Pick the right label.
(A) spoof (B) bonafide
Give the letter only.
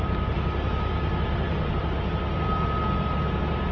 B